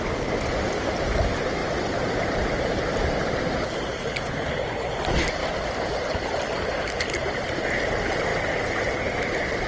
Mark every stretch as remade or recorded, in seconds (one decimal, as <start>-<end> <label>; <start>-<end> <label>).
0.0-9.7 recorded

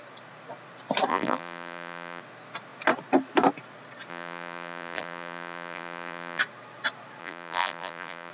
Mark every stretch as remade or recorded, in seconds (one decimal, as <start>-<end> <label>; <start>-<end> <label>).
0.0-1.1 recorded; 1.1-2.2 remade; 2.2-4.1 recorded; 4.1-6.4 remade; 6.4-7.2 recorded; 7.2-8.3 remade

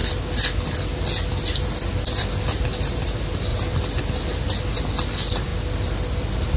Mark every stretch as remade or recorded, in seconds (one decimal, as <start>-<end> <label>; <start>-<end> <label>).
0.0-3.5 recorded; 3.5-4.0 remade; 4.0-6.6 recorded